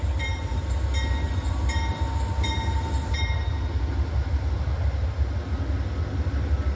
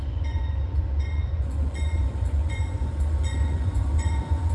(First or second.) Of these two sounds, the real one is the first